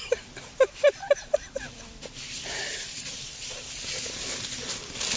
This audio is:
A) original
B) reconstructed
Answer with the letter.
B